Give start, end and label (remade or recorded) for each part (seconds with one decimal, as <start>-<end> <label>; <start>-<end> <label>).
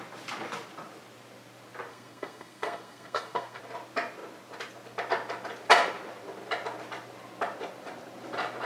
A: 0.0-1.9 recorded; 1.9-3.6 remade; 3.6-8.7 recorded